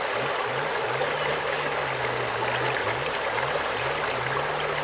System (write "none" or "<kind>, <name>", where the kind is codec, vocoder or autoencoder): none